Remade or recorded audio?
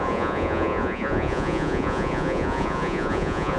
remade